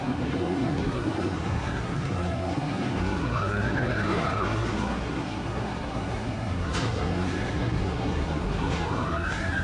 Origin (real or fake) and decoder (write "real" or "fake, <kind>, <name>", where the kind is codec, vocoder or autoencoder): fake, codec, SNAC